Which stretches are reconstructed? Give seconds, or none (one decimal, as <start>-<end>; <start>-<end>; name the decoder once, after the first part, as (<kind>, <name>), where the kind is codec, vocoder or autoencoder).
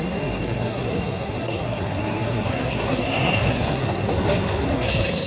0.0-5.3 (codec, SNAC)